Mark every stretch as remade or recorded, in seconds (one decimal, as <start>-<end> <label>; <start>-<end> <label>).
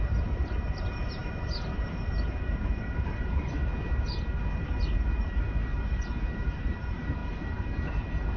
0.0-3.6 remade; 3.6-4.6 recorded; 4.6-7.2 remade; 7.2-8.4 recorded